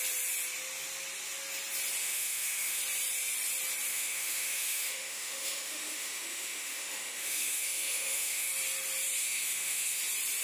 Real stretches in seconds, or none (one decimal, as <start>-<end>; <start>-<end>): 0.0-2.0; 2.8-3.9; 8.5-9.2; 10.0-10.4